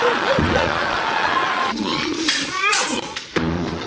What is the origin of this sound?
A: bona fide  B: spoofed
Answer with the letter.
B